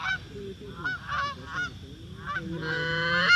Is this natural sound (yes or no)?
yes